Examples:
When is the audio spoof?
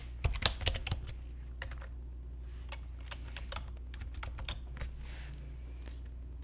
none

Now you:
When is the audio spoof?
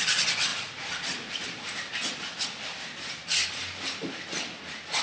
none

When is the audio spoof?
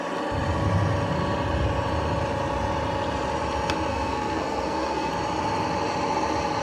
3.9-5.1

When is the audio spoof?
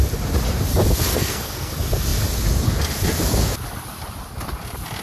1.1-1.7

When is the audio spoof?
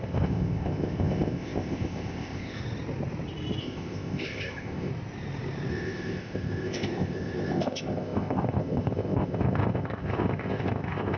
0.0-2.6; 3.6-4.9; 5.7-11.2